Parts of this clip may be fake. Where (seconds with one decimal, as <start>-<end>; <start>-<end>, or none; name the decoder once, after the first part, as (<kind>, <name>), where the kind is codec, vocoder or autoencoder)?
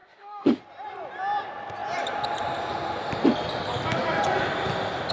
0.0-0.6 (autoencoder, DAC-VAE)